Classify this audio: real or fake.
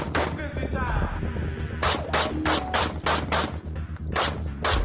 real